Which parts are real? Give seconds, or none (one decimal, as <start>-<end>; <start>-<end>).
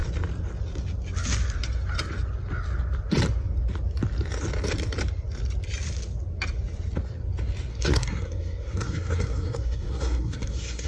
0.0-7.7